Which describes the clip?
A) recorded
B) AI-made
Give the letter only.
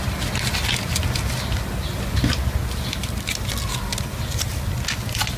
A